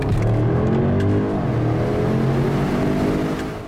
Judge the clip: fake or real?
real